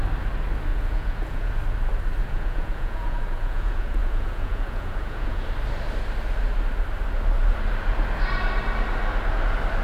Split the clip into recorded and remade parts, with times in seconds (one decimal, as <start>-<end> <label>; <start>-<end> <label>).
0.0-0.7 recorded; 0.7-1.5 remade; 1.5-2.2 recorded; 2.2-5.4 remade; 5.4-9.8 recorded

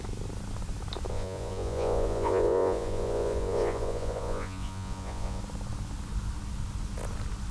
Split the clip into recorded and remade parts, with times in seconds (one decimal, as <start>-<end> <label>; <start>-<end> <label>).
0.0-1.1 recorded; 1.1-5.4 remade; 5.4-7.5 recorded